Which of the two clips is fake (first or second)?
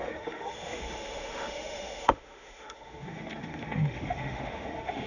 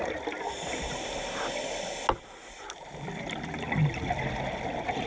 first